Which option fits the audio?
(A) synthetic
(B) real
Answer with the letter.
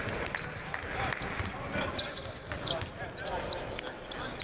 B